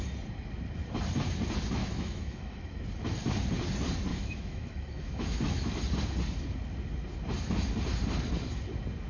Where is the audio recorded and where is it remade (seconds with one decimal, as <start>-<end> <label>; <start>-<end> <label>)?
0.0-1.8 recorded; 1.8-2.8 remade; 2.8-4.1 recorded; 4.1-5.8 remade; 5.8-9.1 recorded